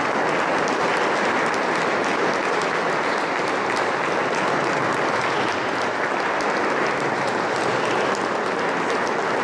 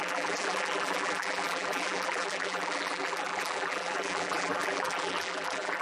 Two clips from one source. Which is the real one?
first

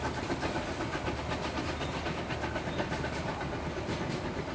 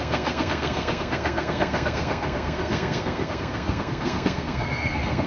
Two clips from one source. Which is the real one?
first